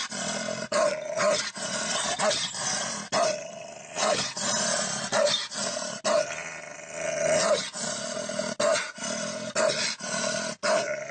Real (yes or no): yes